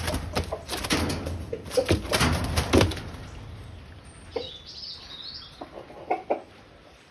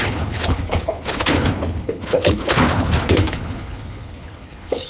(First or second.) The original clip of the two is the first